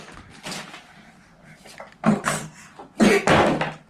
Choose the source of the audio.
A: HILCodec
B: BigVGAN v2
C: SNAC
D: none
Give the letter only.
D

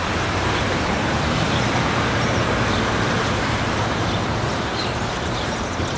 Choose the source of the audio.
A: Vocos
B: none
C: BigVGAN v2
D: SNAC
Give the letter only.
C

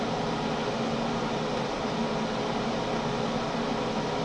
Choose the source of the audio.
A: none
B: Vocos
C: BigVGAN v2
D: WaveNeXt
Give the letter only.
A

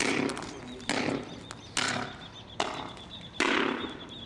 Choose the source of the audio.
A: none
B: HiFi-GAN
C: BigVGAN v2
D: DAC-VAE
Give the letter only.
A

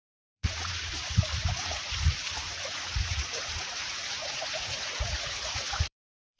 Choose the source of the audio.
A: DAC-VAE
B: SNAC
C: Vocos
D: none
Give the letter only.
C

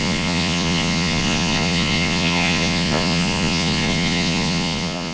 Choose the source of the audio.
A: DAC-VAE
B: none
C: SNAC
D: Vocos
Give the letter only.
D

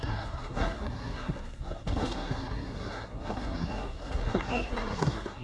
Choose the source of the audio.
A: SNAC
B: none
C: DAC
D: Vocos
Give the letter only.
A